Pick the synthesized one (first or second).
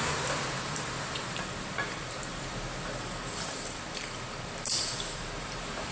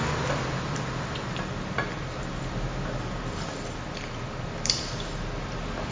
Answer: first